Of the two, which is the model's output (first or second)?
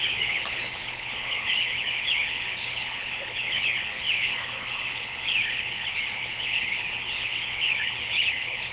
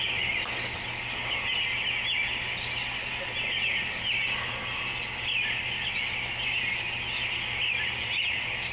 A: first